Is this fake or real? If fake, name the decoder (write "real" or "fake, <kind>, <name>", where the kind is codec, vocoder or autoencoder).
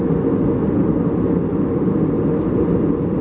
real